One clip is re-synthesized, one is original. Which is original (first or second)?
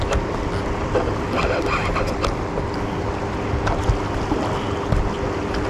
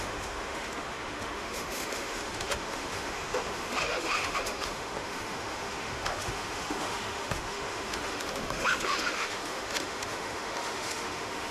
first